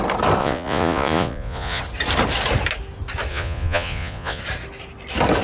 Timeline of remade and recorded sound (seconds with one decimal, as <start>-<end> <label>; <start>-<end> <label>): 0.0-0.4 recorded; 0.4-1.8 remade; 1.8-3.3 recorded; 3.3-4.4 remade; 4.4-5.4 recorded